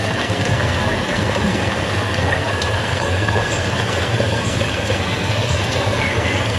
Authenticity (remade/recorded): remade